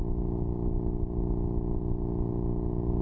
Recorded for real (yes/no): yes